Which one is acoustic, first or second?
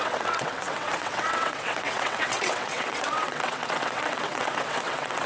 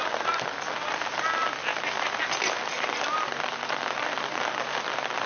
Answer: second